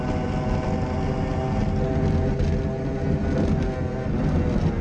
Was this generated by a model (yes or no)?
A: no